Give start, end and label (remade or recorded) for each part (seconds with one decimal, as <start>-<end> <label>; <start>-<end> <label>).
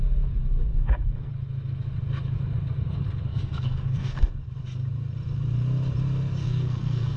0.0-0.7 recorded; 0.7-1.3 remade; 1.3-3.3 recorded; 3.3-4.3 remade; 4.3-6.4 recorded; 6.4-7.2 remade